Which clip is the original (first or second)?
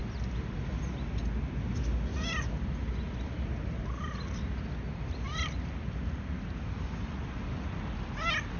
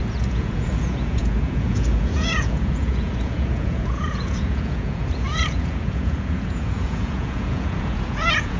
first